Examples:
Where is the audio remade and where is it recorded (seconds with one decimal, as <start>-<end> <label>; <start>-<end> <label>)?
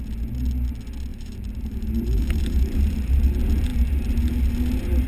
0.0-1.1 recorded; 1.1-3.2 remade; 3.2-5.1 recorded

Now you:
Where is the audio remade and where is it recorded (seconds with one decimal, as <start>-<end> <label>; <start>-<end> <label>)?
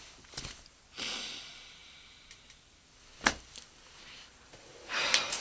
0.0-5.4 recorded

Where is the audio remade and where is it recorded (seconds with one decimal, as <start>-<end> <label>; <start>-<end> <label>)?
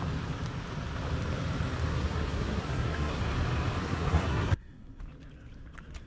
0.0-1.9 recorded; 1.9-3.2 remade; 3.2-3.8 recorded; 3.8-5.0 remade; 5.0-6.1 recorded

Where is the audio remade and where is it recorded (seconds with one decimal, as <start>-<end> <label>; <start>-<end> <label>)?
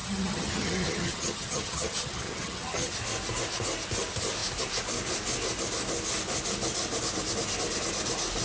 0.0-2.9 remade; 2.9-8.4 recorded